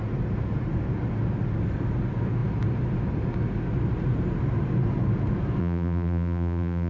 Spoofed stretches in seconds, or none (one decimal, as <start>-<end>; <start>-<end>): 5.6-6.9